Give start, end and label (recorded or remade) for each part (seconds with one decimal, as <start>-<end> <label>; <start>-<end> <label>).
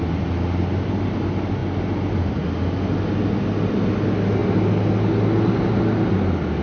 0.0-6.6 recorded